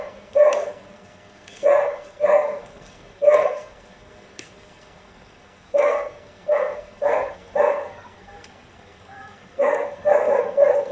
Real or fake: fake